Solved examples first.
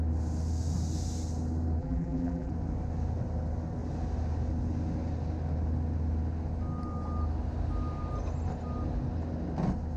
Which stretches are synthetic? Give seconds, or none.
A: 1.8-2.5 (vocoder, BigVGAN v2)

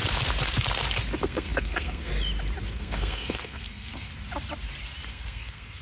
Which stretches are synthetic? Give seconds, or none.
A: 1.2-2.1 (codec, SNAC); 2.7-4.1; 5.1-5.8

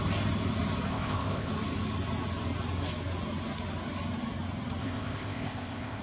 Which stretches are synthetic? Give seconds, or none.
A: 0.9-1.5 (codec, ZipCodec); 4.8-6.0